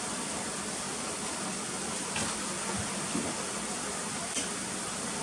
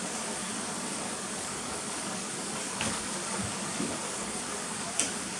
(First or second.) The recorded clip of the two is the first